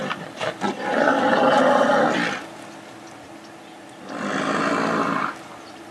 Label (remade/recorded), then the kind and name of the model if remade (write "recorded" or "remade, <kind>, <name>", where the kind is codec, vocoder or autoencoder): recorded